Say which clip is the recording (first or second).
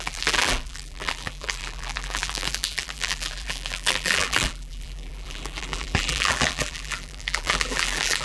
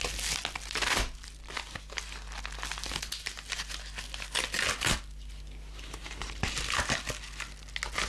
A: second